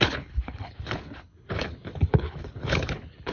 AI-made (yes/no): yes